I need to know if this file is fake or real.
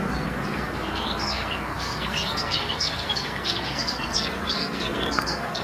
fake